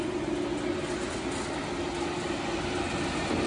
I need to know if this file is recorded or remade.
recorded